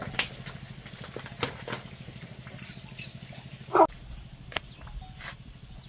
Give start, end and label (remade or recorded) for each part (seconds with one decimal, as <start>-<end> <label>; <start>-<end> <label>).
0.0-5.9 recorded